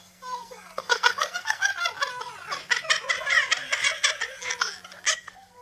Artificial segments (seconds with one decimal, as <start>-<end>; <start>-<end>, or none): 0.0-1.7; 5.1-5.6